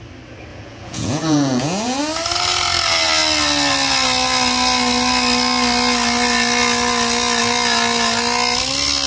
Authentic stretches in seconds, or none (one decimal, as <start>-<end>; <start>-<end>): 0.0-0.5; 2.0-9.1